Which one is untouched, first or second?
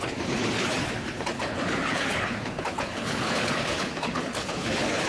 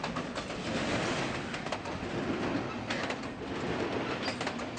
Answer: second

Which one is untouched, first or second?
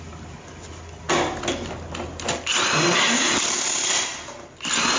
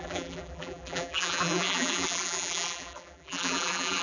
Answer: first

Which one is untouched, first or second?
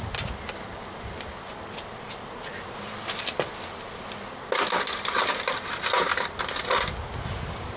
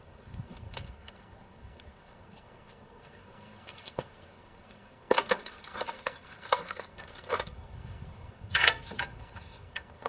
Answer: first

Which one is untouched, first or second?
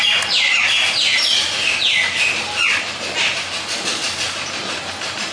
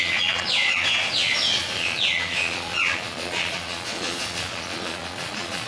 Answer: first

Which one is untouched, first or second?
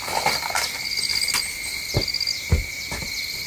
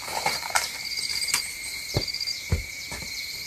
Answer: first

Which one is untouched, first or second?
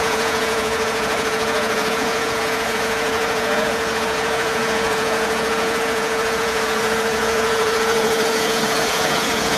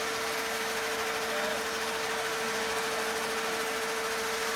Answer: second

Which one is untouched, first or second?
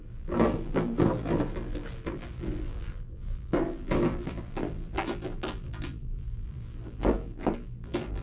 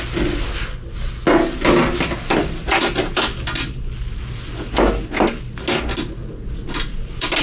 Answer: second